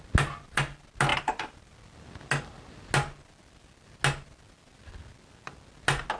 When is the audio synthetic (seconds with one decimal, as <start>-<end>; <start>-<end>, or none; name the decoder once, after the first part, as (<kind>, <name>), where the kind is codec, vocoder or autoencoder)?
1.1-1.7 (vocoder, BigVGAN v2)